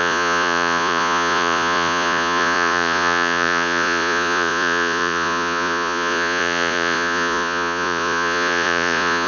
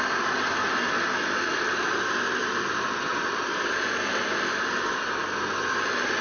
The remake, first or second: first